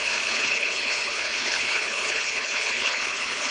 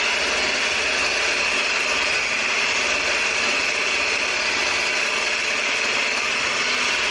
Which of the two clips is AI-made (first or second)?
first